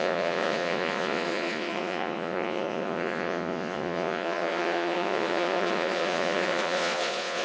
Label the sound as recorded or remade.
remade